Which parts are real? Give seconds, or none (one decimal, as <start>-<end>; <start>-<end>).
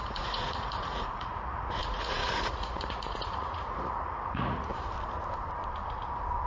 4.7-6.5